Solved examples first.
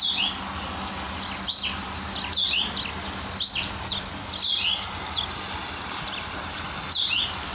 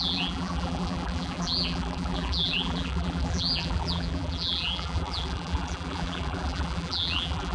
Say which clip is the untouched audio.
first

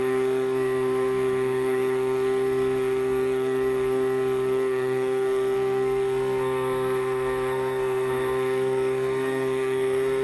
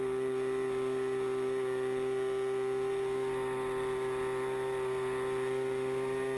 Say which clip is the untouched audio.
second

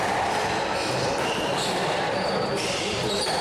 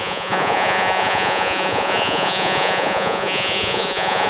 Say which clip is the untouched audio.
first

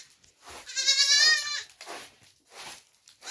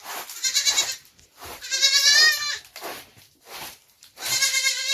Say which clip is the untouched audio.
first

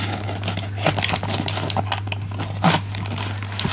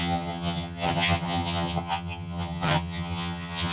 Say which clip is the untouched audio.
first